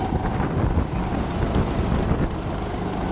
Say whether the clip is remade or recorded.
recorded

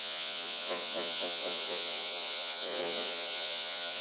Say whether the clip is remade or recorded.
remade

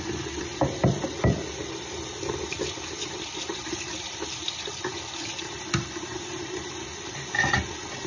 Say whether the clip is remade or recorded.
remade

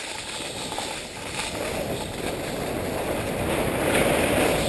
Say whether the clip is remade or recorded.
recorded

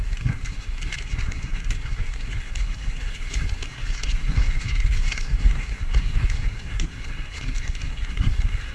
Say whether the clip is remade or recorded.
remade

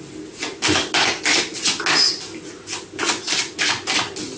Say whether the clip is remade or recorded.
recorded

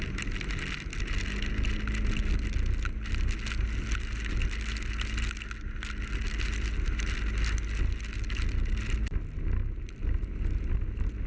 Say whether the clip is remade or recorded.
recorded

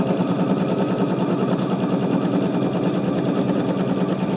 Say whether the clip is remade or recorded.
recorded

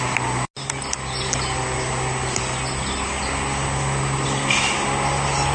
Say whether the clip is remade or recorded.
recorded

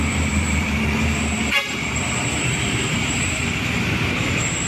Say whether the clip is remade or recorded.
remade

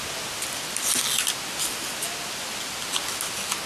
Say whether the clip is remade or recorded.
recorded